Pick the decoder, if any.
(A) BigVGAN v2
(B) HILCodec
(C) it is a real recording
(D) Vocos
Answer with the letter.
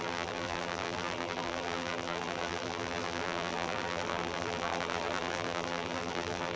A